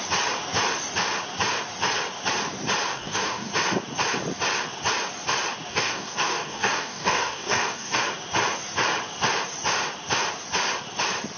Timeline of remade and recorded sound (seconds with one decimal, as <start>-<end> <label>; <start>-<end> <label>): 0.0-2.9 recorded; 2.9-3.5 remade; 3.5-5.7 recorded; 5.7-8.0 remade; 8.0-11.4 recorded